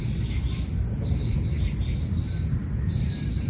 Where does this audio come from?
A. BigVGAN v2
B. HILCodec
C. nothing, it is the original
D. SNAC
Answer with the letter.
C